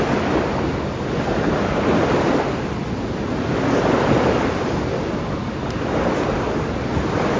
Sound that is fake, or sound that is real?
real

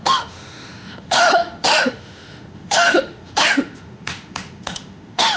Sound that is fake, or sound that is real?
fake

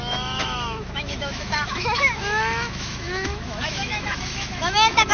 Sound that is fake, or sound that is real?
fake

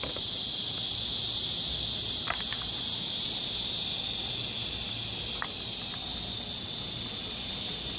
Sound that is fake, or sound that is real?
real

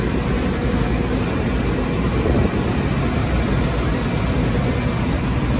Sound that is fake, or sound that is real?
real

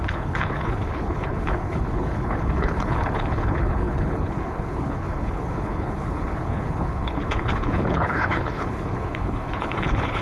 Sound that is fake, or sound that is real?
fake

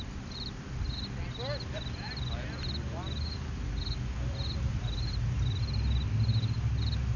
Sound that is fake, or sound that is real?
real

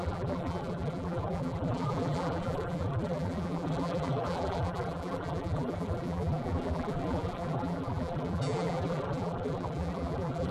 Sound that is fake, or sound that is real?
fake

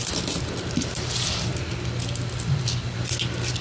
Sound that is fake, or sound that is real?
real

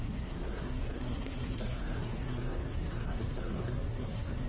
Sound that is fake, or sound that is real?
fake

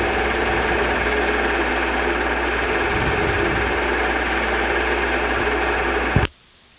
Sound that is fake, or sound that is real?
real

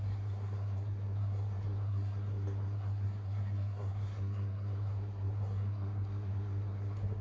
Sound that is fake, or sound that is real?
fake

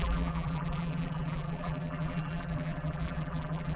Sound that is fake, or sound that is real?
fake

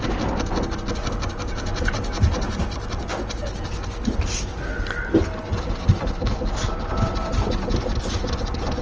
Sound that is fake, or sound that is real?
real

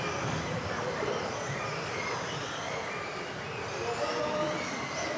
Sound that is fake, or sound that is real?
real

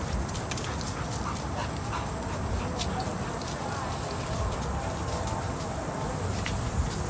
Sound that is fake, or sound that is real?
real